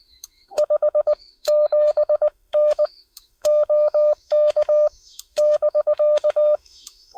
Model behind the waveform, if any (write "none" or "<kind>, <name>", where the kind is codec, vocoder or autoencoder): autoencoder, DAC-VAE